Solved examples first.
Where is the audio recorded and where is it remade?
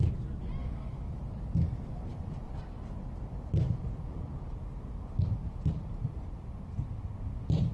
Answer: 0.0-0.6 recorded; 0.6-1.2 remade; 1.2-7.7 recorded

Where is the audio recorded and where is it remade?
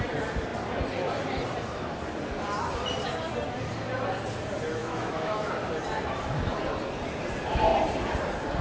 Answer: 0.0-4.8 recorded; 4.8-5.5 remade; 5.5-8.6 recorded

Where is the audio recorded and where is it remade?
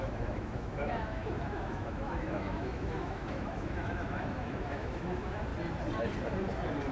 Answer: 0.0-5.5 remade; 5.5-6.9 recorded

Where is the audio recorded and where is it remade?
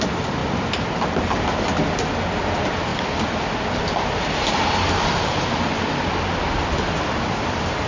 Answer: 0.0-7.9 recorded